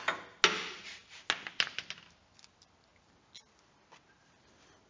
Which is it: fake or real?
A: real